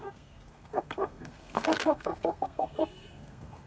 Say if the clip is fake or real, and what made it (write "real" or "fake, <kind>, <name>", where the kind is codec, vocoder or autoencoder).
fake, codec, SNAC